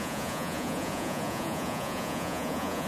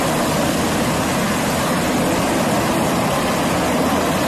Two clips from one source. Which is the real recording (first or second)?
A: second